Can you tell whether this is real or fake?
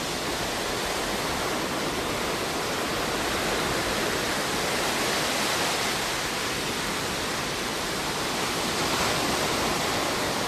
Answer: real